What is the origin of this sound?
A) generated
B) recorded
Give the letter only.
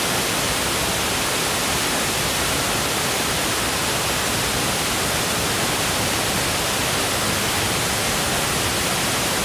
B